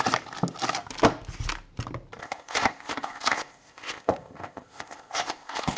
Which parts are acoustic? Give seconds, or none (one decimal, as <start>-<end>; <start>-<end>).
0.0-2.2

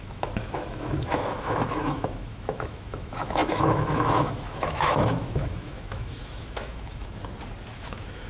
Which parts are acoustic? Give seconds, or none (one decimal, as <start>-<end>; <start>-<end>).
7.2-7.7

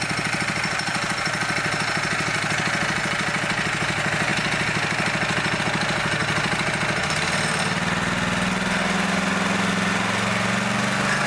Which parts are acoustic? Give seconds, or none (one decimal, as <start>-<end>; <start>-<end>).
0.0-11.3

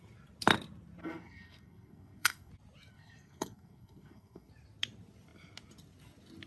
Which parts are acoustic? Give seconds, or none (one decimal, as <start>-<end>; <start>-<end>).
0.0-1.0; 2.5-2.9; 4.5-6.5

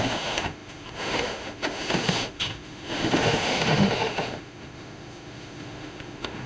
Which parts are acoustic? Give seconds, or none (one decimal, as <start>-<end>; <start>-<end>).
none

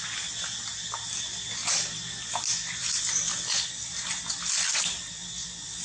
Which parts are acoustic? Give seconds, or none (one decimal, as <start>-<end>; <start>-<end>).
0.0-5.8

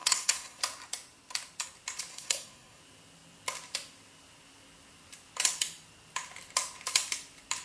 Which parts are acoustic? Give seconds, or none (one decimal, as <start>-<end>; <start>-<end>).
0.6-2.1; 2.8-7.6

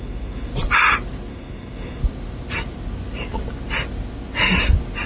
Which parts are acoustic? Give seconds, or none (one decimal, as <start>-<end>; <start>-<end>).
0.5-1.3; 2.0-5.1